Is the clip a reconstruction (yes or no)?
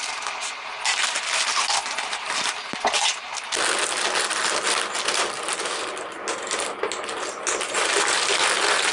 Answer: no